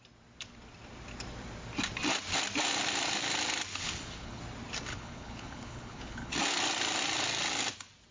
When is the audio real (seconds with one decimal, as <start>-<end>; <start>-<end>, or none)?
0.0-3.7; 4.4-4.9; 6.3-8.1